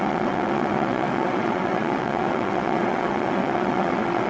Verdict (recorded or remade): remade